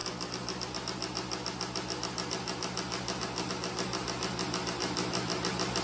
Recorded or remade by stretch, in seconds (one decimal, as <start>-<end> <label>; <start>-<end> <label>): 0.0-5.8 recorded